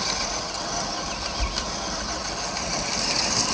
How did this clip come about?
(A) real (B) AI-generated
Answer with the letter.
A